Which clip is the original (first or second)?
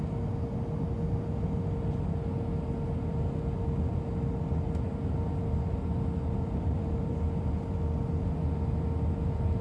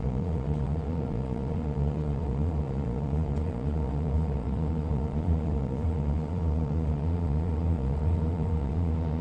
first